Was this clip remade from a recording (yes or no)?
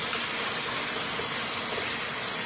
no